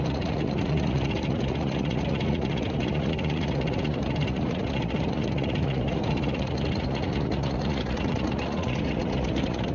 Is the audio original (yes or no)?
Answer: no